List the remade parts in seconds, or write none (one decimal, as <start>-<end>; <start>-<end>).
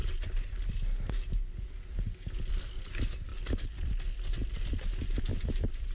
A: none